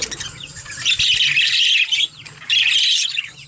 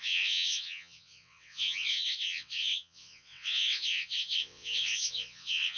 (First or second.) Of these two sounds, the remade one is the second